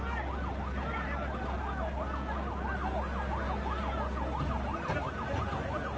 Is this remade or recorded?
recorded